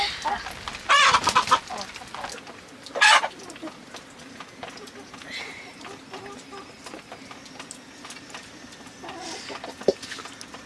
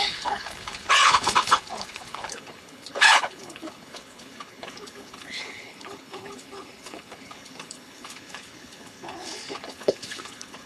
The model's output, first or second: second